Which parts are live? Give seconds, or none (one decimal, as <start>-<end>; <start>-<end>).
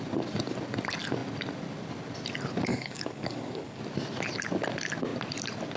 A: 0.0-2.7; 3.8-5.8